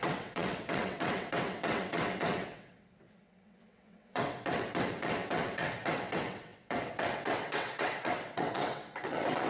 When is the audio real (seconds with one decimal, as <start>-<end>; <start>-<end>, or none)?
none